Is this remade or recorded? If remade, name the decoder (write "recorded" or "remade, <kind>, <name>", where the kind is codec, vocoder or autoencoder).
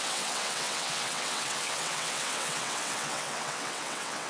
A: remade, vocoder, WaveNeXt